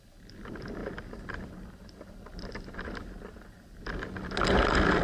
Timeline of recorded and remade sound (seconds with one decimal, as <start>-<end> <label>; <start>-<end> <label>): 0.0-0.8 recorded; 0.8-3.8 remade; 3.8-5.0 recorded